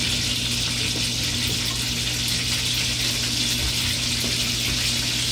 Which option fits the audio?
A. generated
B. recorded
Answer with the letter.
B